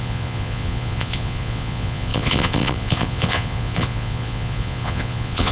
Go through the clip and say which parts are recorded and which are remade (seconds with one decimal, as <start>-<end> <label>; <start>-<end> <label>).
0.0-5.5 remade